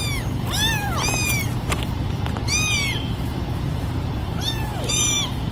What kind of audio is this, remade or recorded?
remade